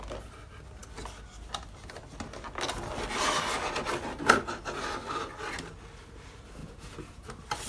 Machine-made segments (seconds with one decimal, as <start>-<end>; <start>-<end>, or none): 6.6-7.2